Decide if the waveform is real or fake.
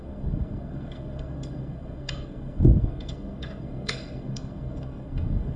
fake